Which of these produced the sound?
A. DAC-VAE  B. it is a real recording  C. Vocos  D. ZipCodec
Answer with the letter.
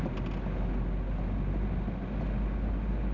B